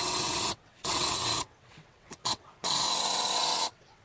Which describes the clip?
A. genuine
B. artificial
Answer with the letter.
B